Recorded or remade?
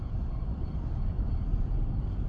recorded